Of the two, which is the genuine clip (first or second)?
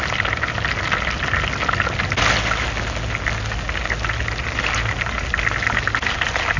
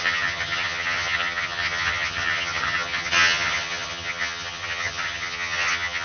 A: first